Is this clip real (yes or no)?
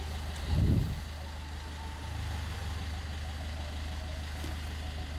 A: yes